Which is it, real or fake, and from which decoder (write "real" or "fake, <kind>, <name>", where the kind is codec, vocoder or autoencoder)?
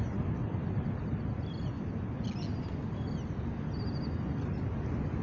real